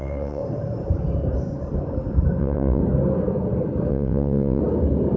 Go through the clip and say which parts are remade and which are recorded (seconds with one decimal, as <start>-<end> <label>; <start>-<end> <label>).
0.0-0.4 remade; 0.4-2.4 recorded; 2.4-2.8 remade; 2.8-3.9 recorded; 3.9-4.6 remade; 4.6-5.2 recorded